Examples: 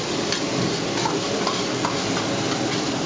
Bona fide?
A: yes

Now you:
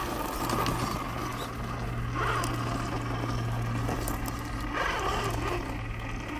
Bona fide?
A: yes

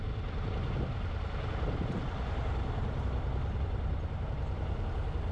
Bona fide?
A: yes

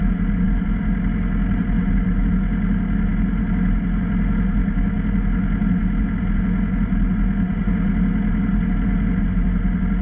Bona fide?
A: yes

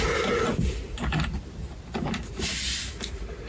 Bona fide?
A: yes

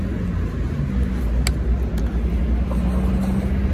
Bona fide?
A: yes